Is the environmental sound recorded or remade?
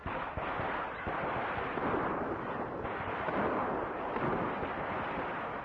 recorded